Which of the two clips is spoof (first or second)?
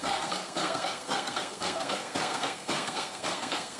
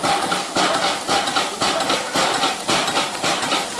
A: first